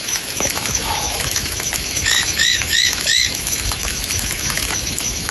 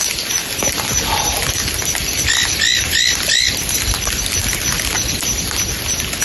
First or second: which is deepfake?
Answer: first